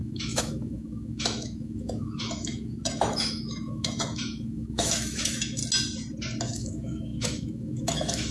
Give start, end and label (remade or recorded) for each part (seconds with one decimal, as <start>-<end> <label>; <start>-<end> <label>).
0.0-5.6 remade; 5.6-6.4 recorded; 6.4-8.3 remade